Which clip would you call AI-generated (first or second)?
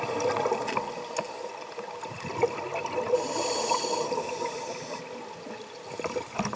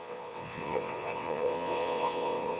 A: second